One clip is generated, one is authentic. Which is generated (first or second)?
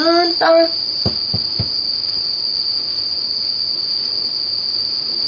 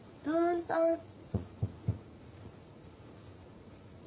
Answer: second